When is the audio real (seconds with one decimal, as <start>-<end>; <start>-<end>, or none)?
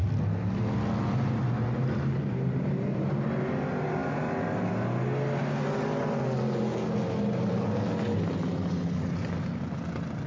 0.0-1.4; 3.3-10.3